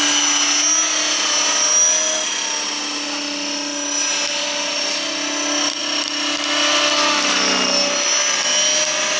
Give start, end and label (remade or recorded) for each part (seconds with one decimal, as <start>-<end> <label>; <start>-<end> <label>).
0.0-9.2 recorded

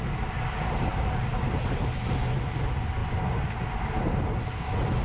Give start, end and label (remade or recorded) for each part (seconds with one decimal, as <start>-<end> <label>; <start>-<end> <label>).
0.0-5.0 recorded